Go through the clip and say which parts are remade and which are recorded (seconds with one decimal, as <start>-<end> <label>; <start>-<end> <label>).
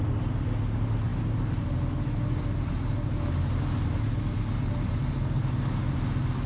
0.0-6.5 recorded